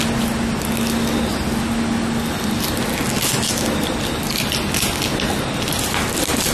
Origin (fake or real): real